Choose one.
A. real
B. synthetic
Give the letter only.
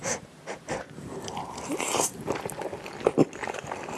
A